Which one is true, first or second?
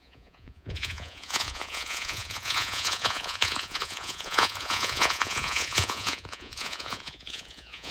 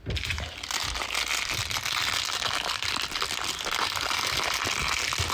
second